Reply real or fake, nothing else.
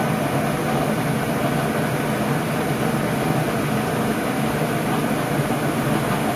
real